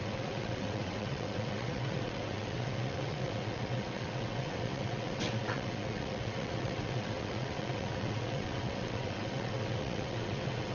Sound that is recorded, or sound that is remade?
remade